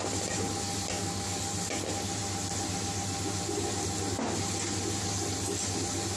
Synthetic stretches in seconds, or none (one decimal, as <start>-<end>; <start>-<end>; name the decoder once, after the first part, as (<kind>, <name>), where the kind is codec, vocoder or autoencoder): none